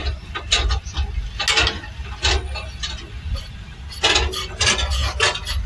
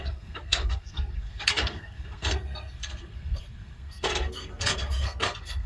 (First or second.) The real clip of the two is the first